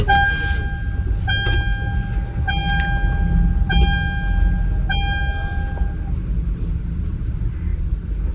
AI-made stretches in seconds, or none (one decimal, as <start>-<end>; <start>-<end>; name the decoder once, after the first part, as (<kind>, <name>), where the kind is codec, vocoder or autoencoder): none